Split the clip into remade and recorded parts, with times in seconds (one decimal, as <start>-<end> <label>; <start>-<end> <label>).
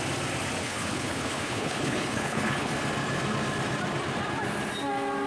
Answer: 0.0-0.6 recorded; 0.6-2.7 remade; 2.7-5.3 recorded